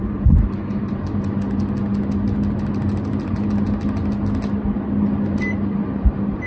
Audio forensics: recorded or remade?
recorded